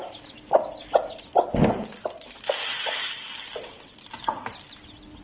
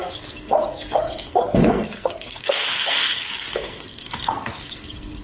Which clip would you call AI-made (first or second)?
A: second